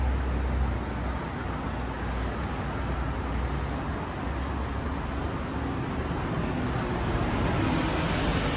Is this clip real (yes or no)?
yes